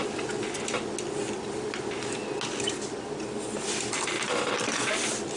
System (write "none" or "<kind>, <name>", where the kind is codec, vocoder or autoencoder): none